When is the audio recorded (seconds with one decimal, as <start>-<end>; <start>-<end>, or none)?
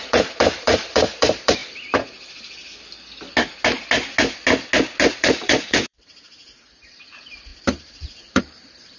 1.6-5.2